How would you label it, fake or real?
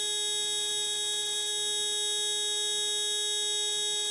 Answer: real